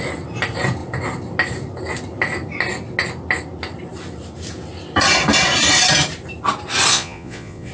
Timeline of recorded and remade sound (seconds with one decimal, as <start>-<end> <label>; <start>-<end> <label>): 0.0-6.9 recorded; 6.9-7.7 remade